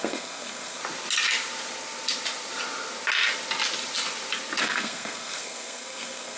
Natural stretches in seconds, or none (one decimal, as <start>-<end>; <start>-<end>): 0.8-4.6